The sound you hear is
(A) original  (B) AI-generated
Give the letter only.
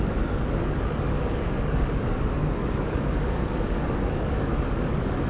B